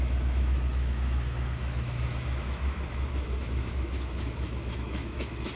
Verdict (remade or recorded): remade